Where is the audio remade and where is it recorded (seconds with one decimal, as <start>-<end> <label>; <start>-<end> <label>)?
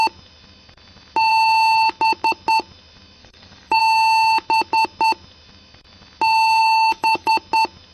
0.0-3.2 recorded; 3.2-3.8 remade; 3.8-6.6 recorded; 6.6-7.3 remade; 7.3-7.9 recorded